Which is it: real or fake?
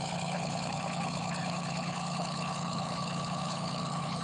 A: fake